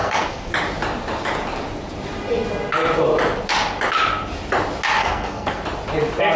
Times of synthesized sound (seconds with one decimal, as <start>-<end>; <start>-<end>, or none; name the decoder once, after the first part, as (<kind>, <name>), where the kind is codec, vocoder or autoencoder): 0.0-0.5 (codec, SNAC); 5.0-5.6